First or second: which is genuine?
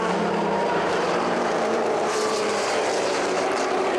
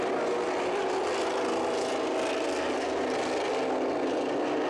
second